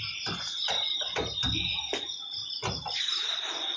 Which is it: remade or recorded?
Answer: recorded